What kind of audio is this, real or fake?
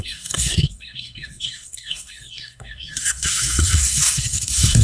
fake